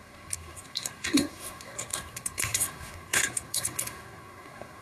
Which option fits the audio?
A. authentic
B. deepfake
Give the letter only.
B